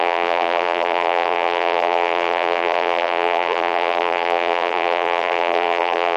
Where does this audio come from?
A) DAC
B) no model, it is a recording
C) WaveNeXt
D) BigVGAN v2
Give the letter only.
D